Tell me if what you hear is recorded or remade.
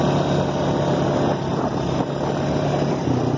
recorded